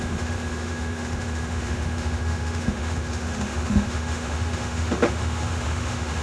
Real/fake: fake